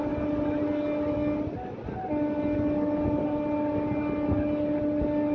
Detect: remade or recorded recorded